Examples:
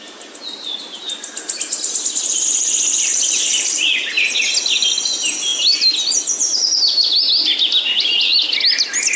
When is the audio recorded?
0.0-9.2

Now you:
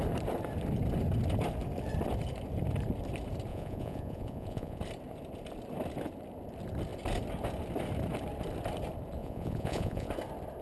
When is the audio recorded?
0.0-3.5; 4.8-9.2; 10.1-10.6

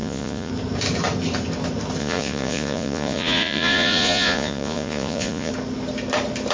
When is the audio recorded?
0.5-2.0; 5.5-6.5